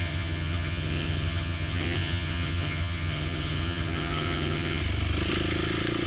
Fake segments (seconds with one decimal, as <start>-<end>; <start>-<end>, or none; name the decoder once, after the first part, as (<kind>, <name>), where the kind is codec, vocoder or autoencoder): 0.0-4.8 (vocoder, HiFi-GAN)

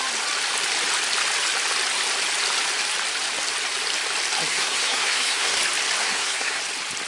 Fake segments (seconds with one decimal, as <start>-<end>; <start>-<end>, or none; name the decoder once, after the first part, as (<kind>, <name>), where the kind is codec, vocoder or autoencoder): 4.5-5.6 (codec, SNAC); 6.0-6.6